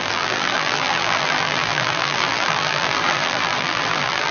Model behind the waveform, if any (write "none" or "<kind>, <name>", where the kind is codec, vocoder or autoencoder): vocoder, BigVGAN v2